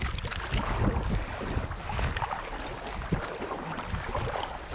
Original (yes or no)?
yes